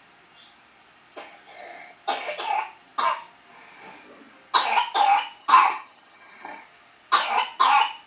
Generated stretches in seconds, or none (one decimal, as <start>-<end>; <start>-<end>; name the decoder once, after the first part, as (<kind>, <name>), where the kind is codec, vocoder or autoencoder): 5.4-6.6 (vocoder, HiFi-GAN)